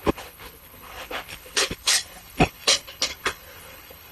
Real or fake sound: fake